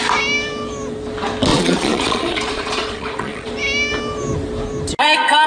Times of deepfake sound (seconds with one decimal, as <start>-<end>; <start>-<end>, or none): 1.5-3.5